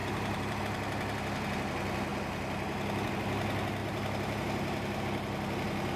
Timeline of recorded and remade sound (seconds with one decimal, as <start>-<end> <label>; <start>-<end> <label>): 0.0-0.6 remade; 0.6-3.8 recorded; 3.8-5.0 remade; 5.0-6.0 recorded